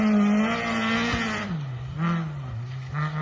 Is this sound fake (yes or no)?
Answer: no